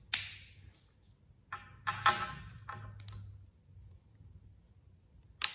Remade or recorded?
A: recorded